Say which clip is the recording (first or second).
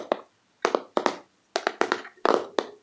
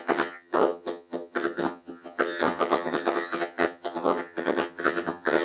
first